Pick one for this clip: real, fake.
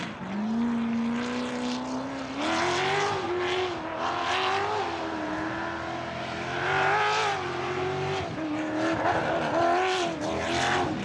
real